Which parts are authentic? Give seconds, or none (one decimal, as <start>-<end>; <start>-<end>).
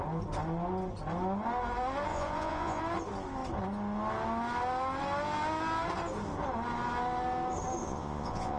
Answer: 0.0-2.1; 2.8-7.8